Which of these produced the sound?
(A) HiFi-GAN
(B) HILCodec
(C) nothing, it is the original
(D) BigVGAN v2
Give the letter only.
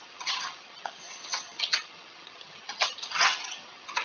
A